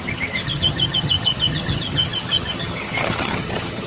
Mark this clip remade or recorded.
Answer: remade